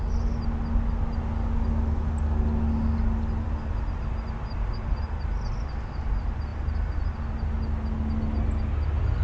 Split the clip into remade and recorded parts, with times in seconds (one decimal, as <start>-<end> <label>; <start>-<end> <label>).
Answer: 0.0-9.2 recorded